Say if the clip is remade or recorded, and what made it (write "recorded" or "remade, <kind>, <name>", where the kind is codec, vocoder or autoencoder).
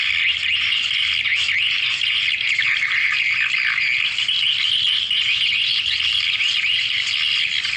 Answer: recorded